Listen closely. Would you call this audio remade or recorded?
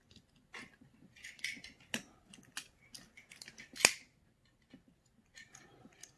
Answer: recorded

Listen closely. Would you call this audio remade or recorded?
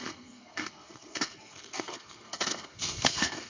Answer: remade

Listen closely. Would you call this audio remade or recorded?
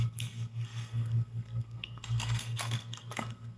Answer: remade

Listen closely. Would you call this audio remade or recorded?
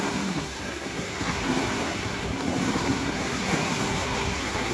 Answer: remade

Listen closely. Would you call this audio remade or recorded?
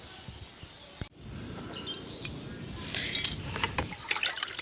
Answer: recorded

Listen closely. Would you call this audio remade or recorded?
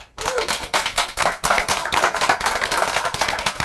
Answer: remade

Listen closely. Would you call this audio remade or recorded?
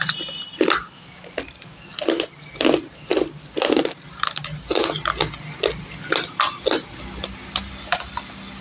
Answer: recorded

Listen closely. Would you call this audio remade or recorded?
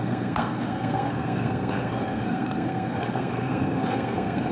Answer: remade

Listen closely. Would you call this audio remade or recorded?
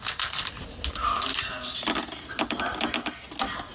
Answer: recorded